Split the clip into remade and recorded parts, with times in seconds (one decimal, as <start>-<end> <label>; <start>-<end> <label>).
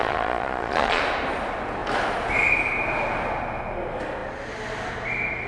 0.0-1.0 remade; 1.0-5.5 recorded